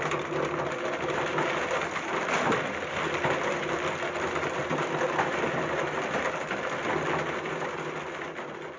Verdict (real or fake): real